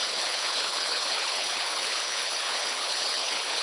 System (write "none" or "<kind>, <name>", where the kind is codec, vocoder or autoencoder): codec, HILCodec